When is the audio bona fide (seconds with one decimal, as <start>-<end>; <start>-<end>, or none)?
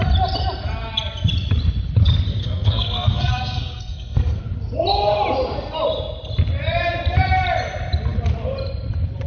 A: 0.0-2.4; 4.4-9.3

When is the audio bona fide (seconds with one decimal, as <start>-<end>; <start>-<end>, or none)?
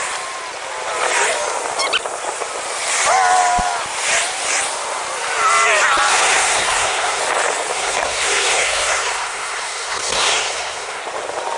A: 0.0-6.1; 7.2-7.7; 11.0-11.6